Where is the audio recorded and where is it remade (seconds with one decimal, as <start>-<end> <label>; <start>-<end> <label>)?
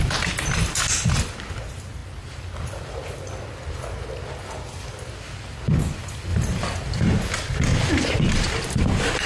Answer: 0.0-6.3 recorded; 6.3-7.0 remade; 7.0-7.7 recorded; 7.7-9.3 remade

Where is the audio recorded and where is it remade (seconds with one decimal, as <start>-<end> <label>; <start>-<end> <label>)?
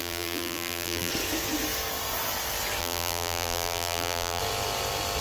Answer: 0.0-1.1 remade; 1.1-2.8 recorded; 2.8-4.4 remade; 4.4-5.2 recorded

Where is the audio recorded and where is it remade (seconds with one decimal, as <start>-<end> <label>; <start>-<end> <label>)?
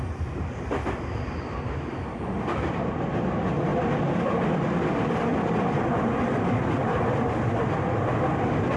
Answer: 0.0-8.8 recorded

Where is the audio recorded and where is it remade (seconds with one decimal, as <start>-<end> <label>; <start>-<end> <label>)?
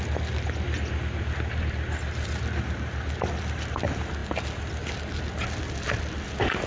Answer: 0.0-6.7 recorded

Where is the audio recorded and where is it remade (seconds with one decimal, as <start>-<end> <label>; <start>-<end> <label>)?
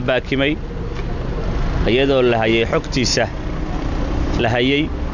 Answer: 0.0-5.1 recorded